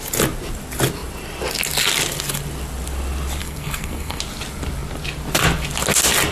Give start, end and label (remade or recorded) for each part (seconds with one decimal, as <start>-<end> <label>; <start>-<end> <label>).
0.0-3.4 recorded; 3.4-4.2 remade; 4.2-6.3 recorded